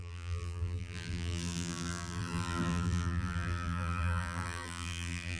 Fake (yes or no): yes